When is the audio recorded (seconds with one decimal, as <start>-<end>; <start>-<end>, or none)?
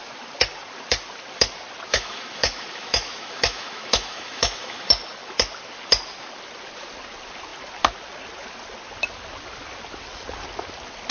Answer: 0.0-1.9; 4.9-11.1